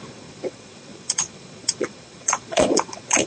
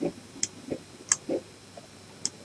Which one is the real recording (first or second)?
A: second